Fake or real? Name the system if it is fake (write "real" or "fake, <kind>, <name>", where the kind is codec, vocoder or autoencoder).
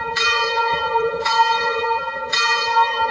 fake, vocoder, BigVGAN v2